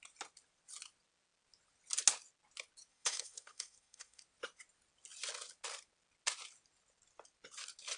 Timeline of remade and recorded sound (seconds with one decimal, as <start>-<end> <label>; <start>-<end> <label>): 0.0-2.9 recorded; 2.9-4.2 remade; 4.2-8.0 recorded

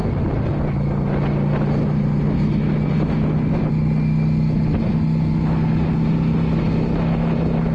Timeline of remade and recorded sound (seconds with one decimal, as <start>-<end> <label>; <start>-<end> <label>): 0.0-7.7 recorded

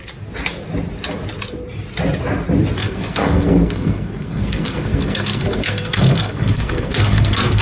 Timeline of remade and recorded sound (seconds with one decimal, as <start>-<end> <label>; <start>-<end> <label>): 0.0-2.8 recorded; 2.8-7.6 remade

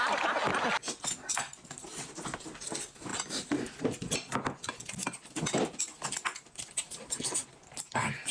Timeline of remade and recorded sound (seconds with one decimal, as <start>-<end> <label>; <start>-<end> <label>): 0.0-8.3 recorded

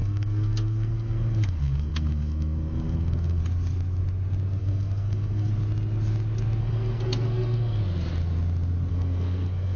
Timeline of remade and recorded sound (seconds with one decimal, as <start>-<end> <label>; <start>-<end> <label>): 0.0-3.4 remade; 3.4-4.6 recorded; 4.6-5.5 remade; 5.5-6.6 recorded; 6.6-7.8 remade; 7.8-8.9 recorded; 8.9-9.8 remade